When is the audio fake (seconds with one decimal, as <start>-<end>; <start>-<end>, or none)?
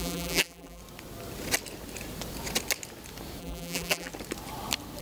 0.0-0.8; 3.4-4.1